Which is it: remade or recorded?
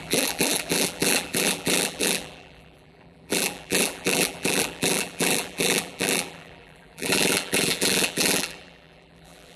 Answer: remade